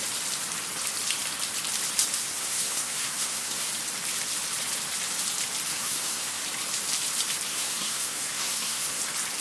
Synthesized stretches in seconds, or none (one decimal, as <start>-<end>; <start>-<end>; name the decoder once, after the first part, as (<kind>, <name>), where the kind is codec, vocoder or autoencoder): 2.2-3.7 (codec, SNAC); 5.7-6.4; 7.5-9.0